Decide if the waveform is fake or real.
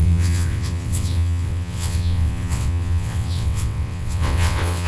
fake